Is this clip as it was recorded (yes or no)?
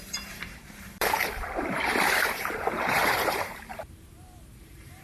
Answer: no